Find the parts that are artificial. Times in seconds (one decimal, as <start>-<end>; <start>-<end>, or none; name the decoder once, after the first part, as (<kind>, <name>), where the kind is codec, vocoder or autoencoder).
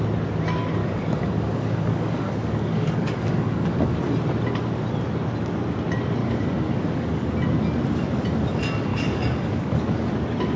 0.8-4.0 (codec, DAC); 6.2-7.3; 8.9-10.1